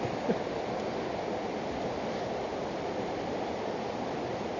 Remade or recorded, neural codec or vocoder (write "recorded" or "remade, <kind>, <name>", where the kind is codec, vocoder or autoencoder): recorded